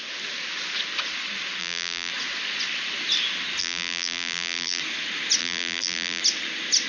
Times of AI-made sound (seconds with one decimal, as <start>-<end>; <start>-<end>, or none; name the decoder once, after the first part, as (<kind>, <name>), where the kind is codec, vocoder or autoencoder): 1.6-2.1 (vocoder, BigVGAN v2); 3.6-4.8; 5.4-6.2